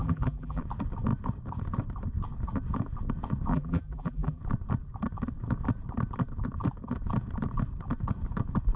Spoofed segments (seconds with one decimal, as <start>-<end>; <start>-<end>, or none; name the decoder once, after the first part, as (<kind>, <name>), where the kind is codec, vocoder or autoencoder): 0.0-0.6 (vocoder, BigVGAN v2); 3.5-4.4